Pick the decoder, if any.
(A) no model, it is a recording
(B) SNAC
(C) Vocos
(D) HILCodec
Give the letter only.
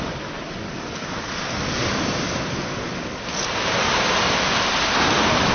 A